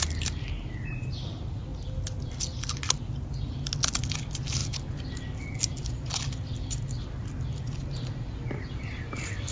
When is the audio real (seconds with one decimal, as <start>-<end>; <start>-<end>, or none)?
0.0-9.5